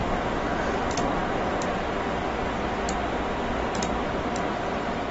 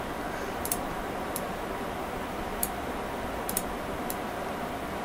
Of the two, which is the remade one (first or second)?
second